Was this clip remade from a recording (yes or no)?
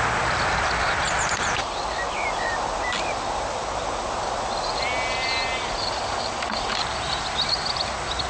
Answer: no